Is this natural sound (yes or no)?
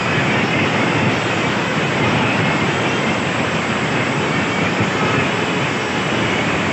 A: yes